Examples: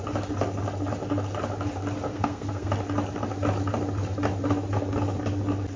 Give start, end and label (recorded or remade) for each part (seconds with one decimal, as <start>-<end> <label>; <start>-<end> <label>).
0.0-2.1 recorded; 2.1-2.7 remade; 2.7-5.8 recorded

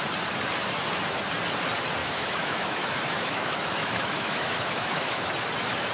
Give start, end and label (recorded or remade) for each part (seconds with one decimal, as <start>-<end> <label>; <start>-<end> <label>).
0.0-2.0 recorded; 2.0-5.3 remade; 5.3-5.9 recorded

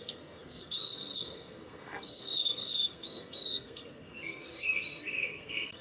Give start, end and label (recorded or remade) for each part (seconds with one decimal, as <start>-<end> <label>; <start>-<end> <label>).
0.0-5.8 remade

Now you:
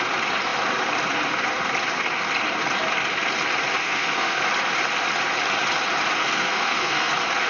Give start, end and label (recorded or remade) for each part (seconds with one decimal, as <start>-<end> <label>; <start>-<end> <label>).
0.0-3.8 recorded; 3.8-4.4 remade; 4.4-6.2 recorded; 6.2-7.1 remade; 7.1-7.5 recorded

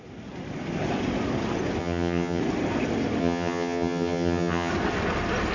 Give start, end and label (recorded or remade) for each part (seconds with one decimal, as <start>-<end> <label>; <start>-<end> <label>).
0.0-1.8 recorded; 1.8-2.4 remade; 2.4-3.2 recorded; 3.2-4.7 remade; 4.7-5.5 recorded

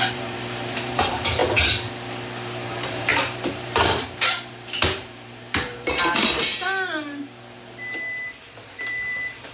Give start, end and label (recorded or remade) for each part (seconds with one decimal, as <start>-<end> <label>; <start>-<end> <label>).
0.0-1.4 remade; 1.4-2.7 recorded; 2.7-6.5 remade; 6.5-8.8 recorded; 8.8-9.5 remade